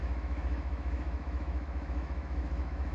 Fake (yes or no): yes